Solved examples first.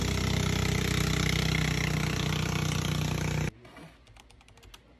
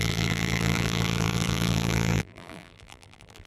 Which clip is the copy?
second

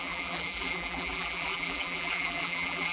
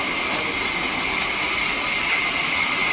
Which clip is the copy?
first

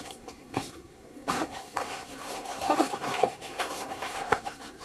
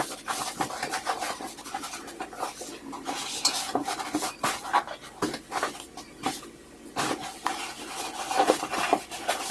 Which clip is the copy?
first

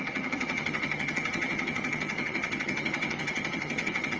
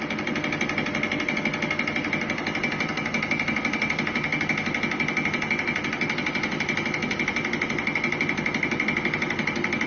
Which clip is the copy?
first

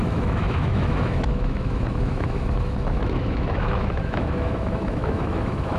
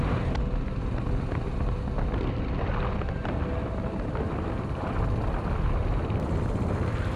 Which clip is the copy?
first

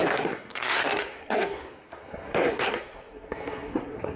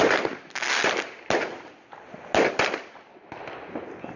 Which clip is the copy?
first